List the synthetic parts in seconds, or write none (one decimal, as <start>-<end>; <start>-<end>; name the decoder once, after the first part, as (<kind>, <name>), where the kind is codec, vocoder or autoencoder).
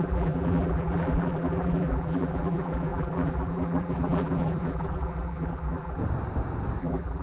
0.0-6.0 (vocoder, BigVGAN v2); 6.8-7.2